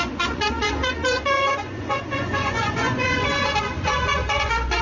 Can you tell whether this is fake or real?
fake